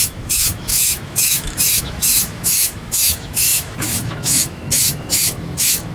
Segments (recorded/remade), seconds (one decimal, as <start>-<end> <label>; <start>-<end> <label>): 0.0-5.9 remade

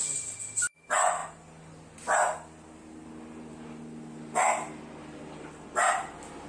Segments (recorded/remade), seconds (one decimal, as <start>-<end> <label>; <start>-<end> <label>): 0.0-6.5 recorded

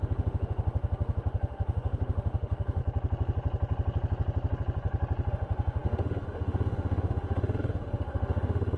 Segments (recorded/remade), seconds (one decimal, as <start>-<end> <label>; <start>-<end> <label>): 0.0-2.8 remade; 2.8-5.3 recorded; 5.3-8.8 remade

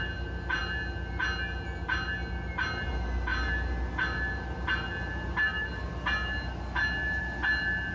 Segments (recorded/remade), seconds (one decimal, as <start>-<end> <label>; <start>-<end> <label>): 0.0-7.9 recorded

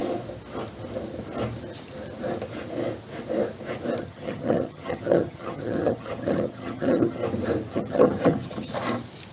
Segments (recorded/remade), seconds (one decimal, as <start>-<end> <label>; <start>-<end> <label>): 0.0-4.0 recorded; 4.0-7.2 remade; 7.2-7.7 recorded; 7.7-8.7 remade; 8.7-9.3 recorded

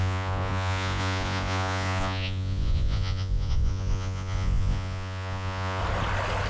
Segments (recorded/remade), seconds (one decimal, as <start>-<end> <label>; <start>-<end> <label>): 0.0-5.8 remade; 5.8-6.5 recorded

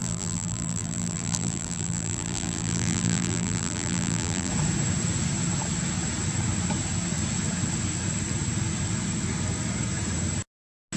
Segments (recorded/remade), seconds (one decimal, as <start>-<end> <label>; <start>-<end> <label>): 0.0-4.5 remade; 4.5-11.0 recorded